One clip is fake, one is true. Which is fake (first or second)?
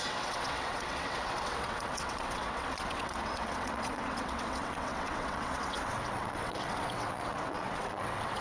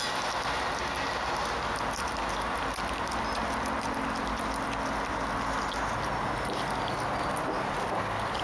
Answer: first